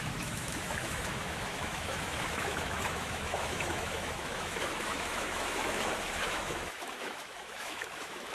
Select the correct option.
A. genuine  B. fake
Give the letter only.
B